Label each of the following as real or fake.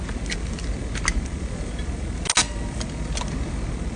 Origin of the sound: real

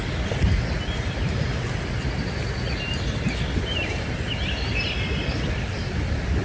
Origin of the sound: real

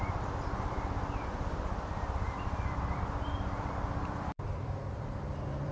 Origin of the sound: fake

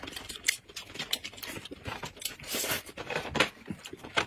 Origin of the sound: fake